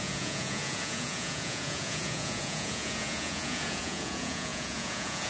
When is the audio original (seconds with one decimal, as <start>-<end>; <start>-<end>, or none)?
none